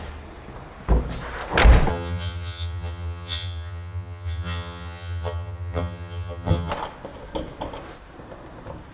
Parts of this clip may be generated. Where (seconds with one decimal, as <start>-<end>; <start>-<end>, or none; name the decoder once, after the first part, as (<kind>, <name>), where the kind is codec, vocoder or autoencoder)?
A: 1.9-6.7 (vocoder, HiFi-GAN)